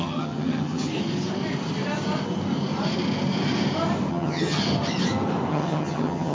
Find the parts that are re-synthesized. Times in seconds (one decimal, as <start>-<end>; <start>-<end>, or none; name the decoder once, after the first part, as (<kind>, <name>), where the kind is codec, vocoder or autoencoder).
0.0-0.9 (vocoder, HiFi-GAN); 4.1-4.6; 5.5-6.3